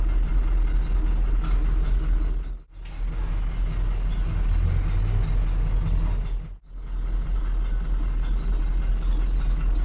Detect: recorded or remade recorded